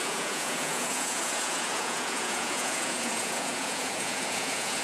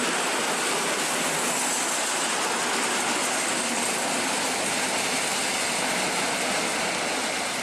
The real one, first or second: second